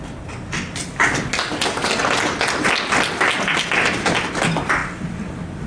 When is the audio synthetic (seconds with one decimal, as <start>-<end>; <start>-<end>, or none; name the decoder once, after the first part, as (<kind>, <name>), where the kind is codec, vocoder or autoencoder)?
none